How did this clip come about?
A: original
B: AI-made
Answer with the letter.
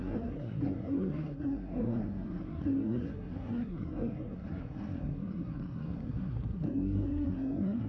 B